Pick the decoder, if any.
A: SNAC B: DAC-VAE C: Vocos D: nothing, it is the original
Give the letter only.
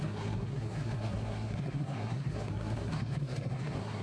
A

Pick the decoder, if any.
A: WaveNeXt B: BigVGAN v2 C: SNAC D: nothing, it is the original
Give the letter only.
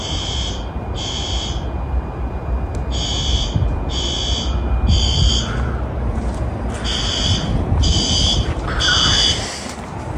D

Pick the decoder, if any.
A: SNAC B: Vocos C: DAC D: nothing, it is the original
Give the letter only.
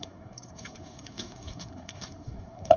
A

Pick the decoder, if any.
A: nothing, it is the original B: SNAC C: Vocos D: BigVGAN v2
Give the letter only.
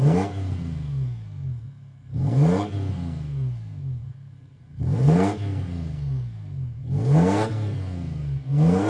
B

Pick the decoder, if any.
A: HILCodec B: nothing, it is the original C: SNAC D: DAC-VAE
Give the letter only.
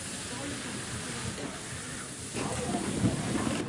B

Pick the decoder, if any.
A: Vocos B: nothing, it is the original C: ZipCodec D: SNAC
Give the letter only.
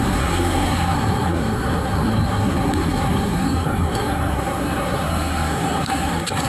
D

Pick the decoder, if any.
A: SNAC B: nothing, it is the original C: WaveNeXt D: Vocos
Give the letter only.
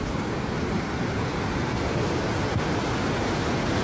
B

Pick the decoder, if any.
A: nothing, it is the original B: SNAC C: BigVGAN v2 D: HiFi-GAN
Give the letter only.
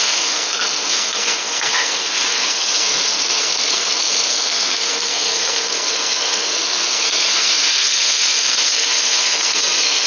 B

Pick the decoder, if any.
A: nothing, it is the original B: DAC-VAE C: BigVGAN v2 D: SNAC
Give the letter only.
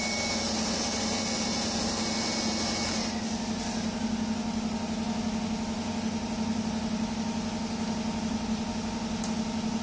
A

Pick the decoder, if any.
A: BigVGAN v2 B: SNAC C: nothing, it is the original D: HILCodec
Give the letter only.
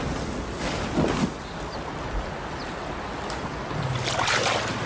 C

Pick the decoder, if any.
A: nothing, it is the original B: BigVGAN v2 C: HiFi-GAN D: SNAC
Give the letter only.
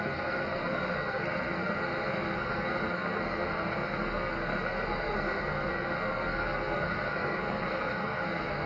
D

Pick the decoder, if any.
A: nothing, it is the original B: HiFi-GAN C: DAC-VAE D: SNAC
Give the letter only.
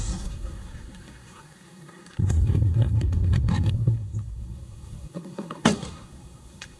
D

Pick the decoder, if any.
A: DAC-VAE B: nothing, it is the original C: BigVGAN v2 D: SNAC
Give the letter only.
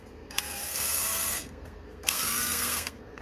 D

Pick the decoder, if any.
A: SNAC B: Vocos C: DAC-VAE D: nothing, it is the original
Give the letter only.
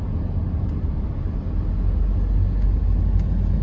D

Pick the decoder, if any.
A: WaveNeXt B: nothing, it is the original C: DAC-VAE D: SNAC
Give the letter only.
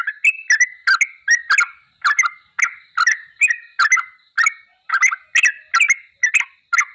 B